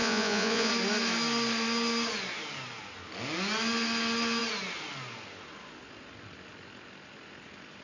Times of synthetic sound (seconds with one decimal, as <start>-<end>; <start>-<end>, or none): 0.0-0.7